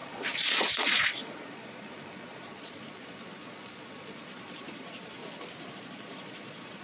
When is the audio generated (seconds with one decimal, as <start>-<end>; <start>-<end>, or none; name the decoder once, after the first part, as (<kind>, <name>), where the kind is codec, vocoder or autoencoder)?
0.0-5.2 (vocoder, Vocos); 5.8-6.8